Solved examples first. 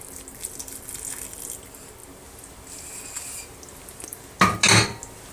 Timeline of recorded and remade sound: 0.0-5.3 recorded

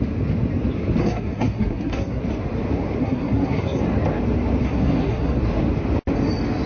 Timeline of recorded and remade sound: 0.0-1.0 recorded; 1.0-2.2 remade; 2.2-3.0 recorded; 3.0-3.8 remade; 3.8-4.6 recorded; 4.6-5.4 remade; 5.4-6.7 recorded

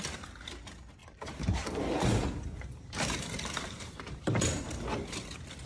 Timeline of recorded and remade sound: 0.0-1.0 recorded; 1.0-4.4 remade; 4.4-5.7 recorded

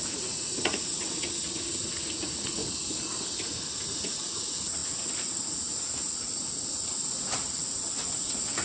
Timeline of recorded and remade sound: 0.0-2.6 remade; 2.6-3.8 recorded; 3.8-8.6 remade

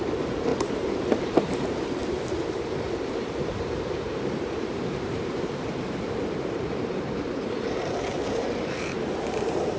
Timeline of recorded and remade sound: 0.0-9.8 remade

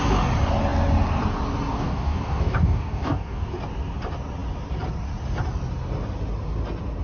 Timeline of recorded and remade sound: 0.0-1.7 recorded; 1.7-3.5 remade; 3.5-7.0 recorded